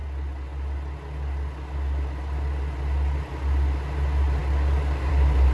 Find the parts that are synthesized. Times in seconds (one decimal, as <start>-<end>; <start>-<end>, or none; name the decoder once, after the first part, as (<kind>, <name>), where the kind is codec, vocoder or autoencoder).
none